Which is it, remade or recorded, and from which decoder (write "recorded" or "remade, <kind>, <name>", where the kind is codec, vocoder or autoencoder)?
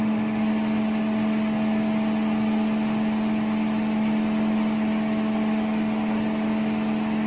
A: recorded